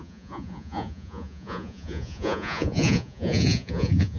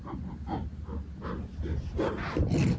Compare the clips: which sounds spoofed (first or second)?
first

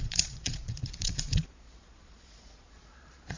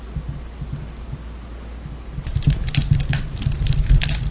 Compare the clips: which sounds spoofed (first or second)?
first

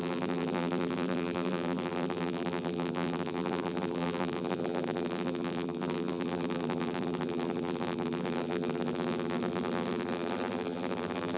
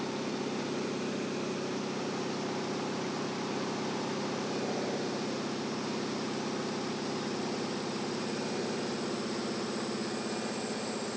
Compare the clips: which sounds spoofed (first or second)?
first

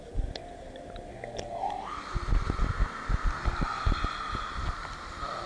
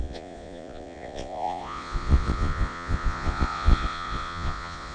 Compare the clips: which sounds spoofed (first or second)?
second